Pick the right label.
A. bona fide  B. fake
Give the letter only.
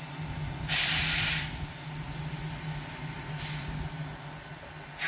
A